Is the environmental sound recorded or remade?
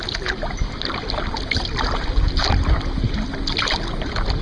recorded